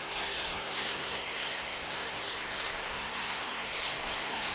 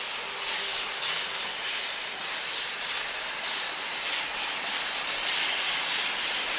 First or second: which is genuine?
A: second